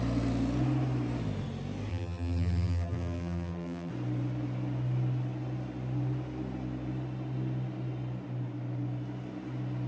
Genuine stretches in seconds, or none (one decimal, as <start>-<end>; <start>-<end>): 0.0-1.9; 3.9-9.9